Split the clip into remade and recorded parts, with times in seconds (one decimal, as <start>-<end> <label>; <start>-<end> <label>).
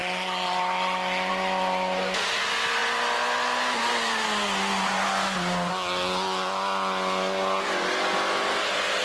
0.0-9.0 recorded